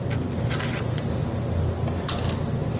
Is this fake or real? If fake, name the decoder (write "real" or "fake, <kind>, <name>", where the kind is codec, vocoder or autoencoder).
real